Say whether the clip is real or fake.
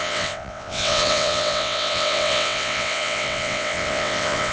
fake